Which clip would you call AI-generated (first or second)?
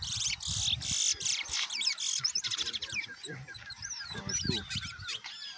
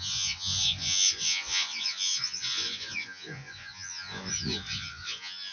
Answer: second